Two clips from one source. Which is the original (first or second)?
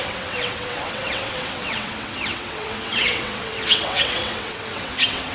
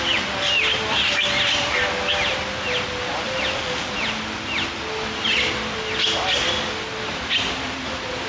second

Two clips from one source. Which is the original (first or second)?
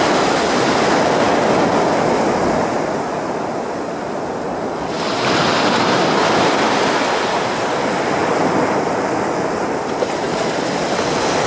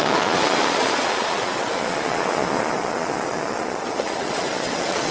first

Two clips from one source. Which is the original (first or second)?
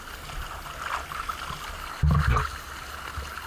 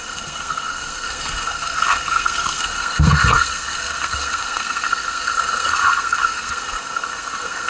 first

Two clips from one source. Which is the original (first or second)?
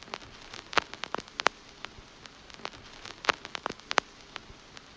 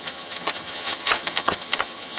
first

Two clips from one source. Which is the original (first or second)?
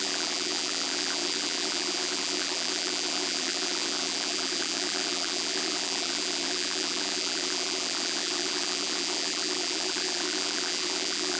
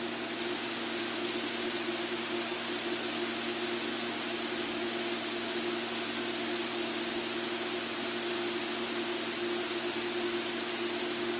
second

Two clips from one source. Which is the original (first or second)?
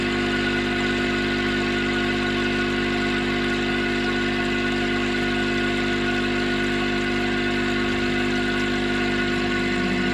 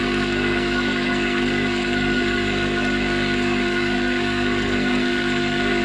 first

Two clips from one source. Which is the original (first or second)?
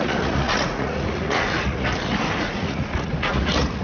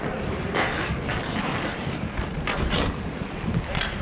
second